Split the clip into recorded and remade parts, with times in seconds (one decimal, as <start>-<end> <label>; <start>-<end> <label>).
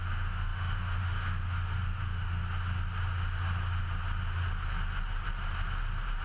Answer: 0.0-2.4 remade; 2.4-6.2 recorded